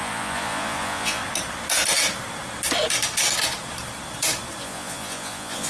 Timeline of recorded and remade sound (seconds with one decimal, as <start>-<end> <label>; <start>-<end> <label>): 0.0-1.2 remade; 1.2-4.6 recorded; 4.6-5.7 remade